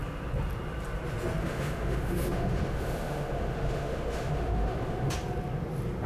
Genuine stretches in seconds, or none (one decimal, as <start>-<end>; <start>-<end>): 0.0-1.4; 5.1-6.1